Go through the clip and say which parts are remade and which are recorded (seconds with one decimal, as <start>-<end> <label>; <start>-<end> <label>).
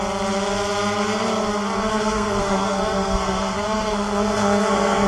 0.0-1.9 recorded; 1.9-5.1 remade